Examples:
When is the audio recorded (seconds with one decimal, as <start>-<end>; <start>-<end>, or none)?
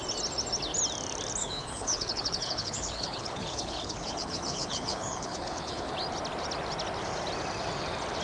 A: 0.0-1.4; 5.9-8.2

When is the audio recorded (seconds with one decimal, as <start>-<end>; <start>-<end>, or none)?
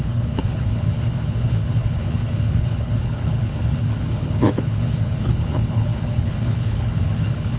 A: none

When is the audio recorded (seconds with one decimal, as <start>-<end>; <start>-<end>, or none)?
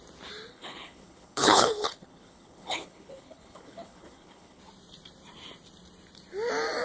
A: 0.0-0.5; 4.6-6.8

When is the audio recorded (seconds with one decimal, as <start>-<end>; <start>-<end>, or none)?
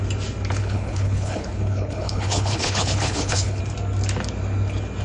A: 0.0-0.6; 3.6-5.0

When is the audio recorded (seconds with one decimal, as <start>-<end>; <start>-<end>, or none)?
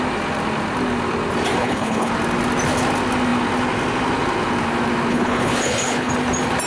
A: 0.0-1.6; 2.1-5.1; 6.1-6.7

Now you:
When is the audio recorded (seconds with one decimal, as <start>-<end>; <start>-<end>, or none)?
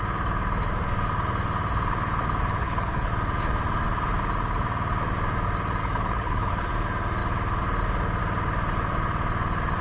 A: 0.0-2.6; 3.1-5.8; 6.7-9.8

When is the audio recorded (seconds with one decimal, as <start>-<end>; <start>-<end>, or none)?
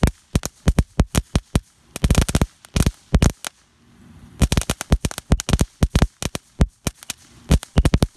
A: 0.0-8.2